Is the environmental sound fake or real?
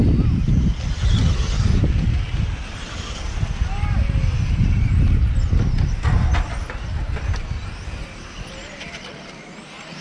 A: real